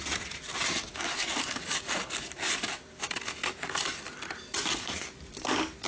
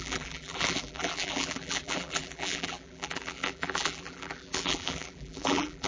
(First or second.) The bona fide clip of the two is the first